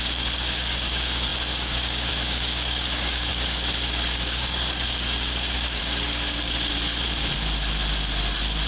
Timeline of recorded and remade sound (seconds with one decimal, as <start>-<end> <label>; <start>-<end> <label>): 0.0-6.7 remade; 6.7-8.7 recorded